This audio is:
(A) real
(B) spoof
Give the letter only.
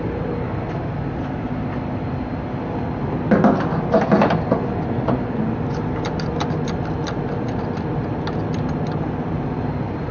A